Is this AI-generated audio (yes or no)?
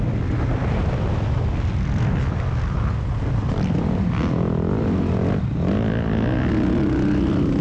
no